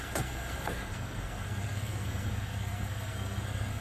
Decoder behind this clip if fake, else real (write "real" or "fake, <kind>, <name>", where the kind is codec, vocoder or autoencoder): fake, codec, SNAC